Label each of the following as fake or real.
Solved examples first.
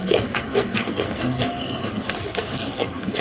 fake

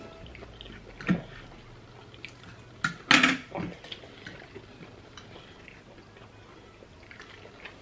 real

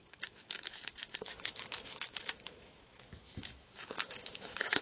fake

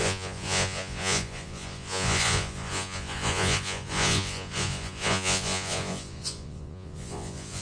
fake